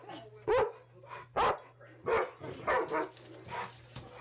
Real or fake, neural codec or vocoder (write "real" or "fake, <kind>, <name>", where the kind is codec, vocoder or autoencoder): real